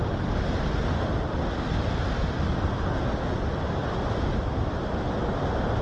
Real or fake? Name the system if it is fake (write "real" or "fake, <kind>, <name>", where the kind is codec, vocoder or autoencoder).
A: real